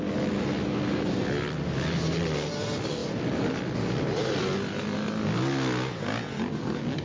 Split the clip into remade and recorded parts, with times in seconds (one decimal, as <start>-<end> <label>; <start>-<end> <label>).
0.0-7.0 recorded

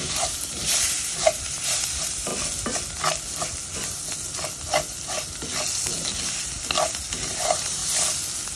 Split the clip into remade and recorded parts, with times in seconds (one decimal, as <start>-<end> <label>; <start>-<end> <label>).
0.0-2.3 remade; 2.3-7.2 recorded; 7.2-7.8 remade; 7.8-8.6 recorded

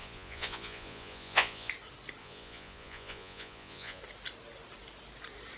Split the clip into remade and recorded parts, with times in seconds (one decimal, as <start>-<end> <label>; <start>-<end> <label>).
0.0-1.7 remade; 1.7-2.2 recorded; 2.2-4.0 remade; 4.0-5.6 recorded

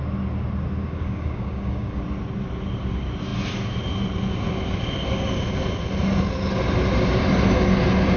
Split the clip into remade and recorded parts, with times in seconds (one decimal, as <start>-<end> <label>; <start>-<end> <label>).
0.0-0.8 recorded; 0.8-2.0 remade; 2.0-8.2 recorded

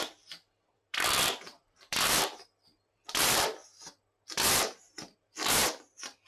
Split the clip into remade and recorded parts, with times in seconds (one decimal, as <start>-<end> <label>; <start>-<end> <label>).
0.0-3.6 remade; 3.6-4.8 recorded; 4.8-5.6 remade; 5.6-6.3 recorded

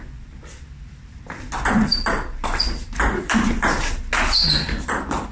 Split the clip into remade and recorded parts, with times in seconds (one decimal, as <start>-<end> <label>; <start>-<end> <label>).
0.0-5.3 recorded

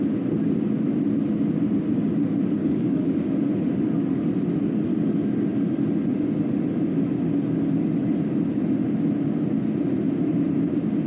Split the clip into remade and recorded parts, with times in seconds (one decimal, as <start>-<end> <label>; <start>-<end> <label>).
0.0-2.6 recorded; 2.6-3.3 remade; 3.3-11.1 recorded

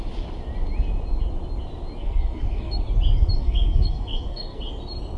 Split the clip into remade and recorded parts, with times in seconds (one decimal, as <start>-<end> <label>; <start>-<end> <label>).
0.0-2.0 recorded; 2.0-2.8 remade; 2.8-3.4 recorded; 3.4-4.6 remade; 4.6-5.2 recorded